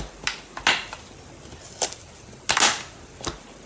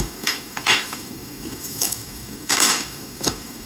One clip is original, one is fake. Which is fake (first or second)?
second